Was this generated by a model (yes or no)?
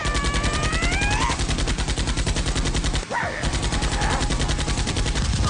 yes